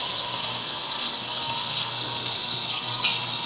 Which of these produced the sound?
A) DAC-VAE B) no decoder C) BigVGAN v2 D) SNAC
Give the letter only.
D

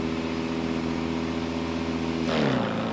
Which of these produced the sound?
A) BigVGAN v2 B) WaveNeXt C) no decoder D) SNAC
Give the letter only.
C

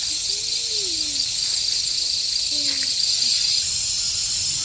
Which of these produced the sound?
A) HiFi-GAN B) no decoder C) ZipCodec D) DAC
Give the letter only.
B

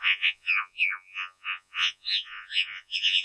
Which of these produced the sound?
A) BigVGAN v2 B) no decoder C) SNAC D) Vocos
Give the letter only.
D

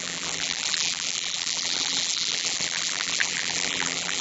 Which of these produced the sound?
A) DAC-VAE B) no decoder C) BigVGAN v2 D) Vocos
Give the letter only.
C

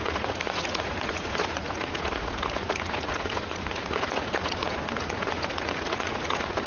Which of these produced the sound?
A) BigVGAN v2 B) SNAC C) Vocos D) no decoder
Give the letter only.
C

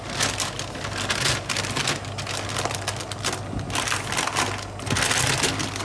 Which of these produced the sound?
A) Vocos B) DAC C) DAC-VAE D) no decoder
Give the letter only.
D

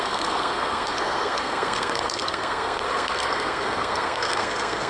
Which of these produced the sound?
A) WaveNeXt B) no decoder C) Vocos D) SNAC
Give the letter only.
D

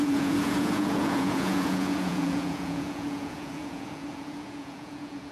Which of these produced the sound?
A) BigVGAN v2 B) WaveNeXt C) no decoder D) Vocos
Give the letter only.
D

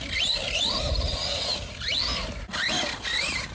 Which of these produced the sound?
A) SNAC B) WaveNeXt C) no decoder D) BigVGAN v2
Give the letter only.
D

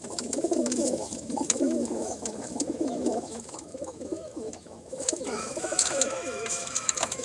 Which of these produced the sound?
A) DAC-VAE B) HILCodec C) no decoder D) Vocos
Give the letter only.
A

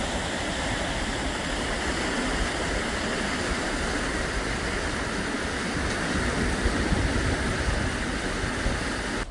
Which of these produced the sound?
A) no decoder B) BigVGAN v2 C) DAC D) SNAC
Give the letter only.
A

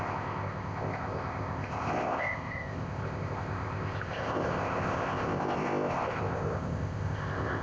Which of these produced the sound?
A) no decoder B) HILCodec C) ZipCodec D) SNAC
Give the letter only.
C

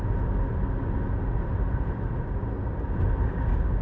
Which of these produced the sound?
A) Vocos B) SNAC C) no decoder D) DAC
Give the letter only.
C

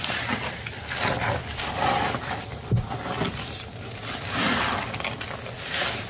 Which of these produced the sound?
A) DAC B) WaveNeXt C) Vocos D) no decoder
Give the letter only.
D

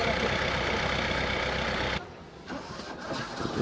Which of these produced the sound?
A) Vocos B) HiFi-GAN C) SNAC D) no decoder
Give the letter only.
D